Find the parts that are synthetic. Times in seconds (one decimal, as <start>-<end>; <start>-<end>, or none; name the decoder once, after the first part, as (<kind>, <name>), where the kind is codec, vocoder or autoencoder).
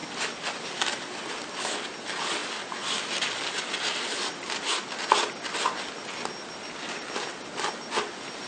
none